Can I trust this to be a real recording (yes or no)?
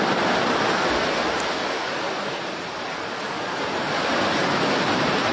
yes